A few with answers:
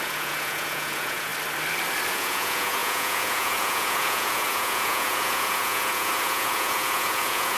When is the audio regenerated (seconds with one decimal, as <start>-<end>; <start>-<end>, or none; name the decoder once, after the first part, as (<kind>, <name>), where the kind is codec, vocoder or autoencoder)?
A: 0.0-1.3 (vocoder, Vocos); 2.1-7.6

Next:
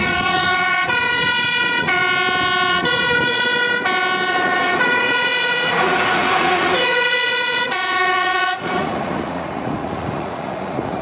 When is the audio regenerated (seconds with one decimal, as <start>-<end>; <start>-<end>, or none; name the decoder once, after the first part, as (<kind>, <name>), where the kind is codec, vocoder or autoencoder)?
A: 0.0-2.0 (vocoder, Vocos); 2.7-3.5; 4.3-11.0

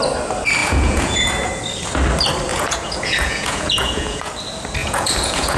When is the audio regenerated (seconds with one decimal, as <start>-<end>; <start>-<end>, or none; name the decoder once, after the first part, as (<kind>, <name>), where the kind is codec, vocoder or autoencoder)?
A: 0.6-1.3 (vocoder, Vocos); 2.5-4.3; 4.8-5.6

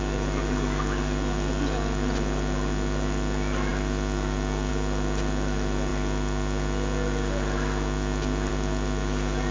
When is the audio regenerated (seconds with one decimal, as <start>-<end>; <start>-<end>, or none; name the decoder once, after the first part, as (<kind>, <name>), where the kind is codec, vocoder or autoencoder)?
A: none

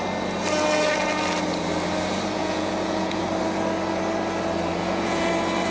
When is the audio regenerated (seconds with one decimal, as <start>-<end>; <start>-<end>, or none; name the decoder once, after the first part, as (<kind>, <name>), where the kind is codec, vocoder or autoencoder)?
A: 2.4-3.2 (vocoder, Vocos); 4.8-5.3